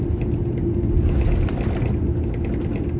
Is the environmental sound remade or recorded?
recorded